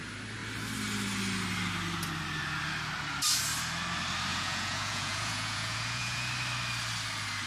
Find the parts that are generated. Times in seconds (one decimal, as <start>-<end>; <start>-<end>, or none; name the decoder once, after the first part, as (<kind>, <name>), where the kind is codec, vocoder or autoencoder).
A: 4.3-6.3 (vocoder, Vocos)